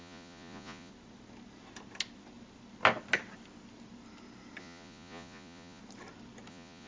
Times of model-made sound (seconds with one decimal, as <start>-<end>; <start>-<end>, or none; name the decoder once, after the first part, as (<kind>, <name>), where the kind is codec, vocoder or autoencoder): 0.0-0.9 (vocoder, Vocos); 4.6-5.8; 6.5-6.9